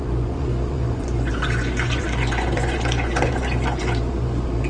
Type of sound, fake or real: fake